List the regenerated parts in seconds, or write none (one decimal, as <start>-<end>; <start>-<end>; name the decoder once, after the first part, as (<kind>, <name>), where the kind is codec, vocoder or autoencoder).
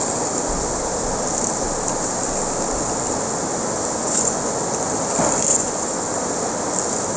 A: 4.0-4.5 (vocoder, Vocos); 5.5-6.1